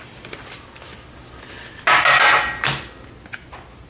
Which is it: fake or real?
real